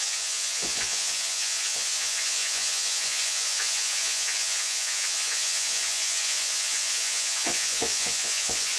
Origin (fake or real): fake